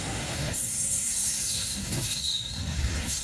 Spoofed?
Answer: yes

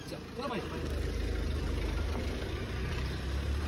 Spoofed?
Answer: no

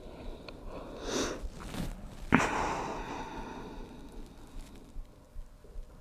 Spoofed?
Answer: no